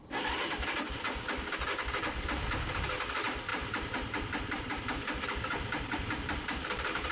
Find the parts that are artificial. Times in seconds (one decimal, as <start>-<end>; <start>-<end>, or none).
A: 3.5-7.1